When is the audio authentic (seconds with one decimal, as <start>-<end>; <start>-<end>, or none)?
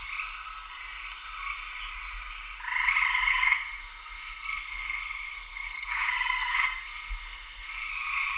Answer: 0.0-3.3; 7.9-8.4